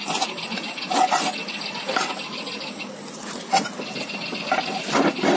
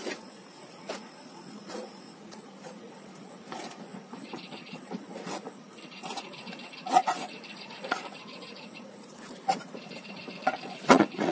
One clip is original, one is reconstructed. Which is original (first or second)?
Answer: first